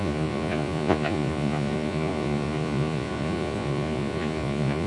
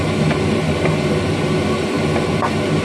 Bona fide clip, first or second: second